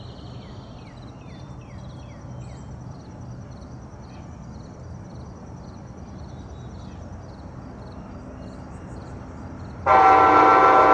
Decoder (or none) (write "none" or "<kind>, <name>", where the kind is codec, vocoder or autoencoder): none